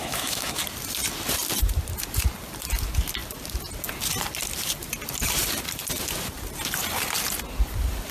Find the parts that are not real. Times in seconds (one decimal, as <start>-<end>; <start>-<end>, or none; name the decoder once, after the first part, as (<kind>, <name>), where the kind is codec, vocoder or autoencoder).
0.0-0.6 (autoencoder, DAC-VAE)